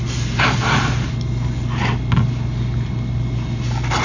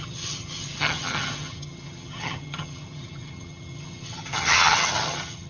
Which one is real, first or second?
first